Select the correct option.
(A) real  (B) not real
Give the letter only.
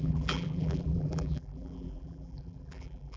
B